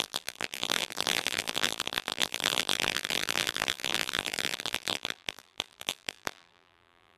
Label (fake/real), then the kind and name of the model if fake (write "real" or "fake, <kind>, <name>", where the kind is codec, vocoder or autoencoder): fake, vocoder, BigVGAN v2